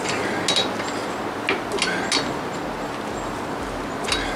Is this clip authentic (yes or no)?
yes